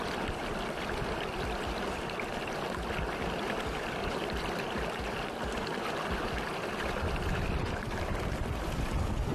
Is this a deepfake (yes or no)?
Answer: no